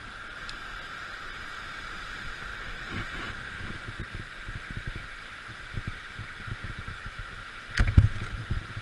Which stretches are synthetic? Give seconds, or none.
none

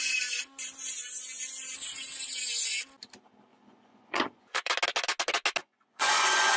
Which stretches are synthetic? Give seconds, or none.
3.5-4.7; 5.6-6.6

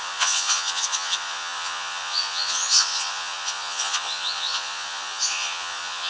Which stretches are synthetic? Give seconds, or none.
0.0-6.1

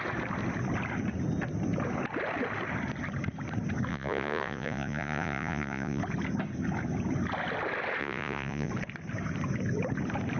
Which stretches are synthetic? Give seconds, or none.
3.9-6.0; 8.0-8.7

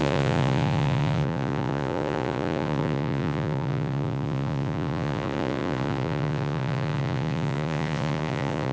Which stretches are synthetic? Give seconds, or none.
0.0-8.7